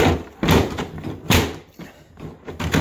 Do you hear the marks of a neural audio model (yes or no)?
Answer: no